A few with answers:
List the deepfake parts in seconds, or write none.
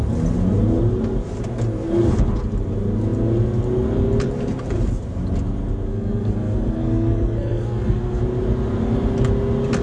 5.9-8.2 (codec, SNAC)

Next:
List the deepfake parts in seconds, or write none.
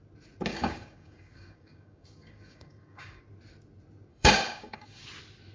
0.5-3.2 (codec, DAC); 4.1-5.0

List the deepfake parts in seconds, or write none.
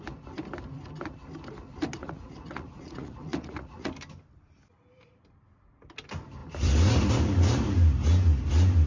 2.0-3.9 (vocoder, Vocos)